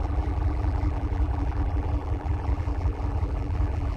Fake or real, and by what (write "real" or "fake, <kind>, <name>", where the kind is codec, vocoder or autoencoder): fake, vocoder, BigVGAN v2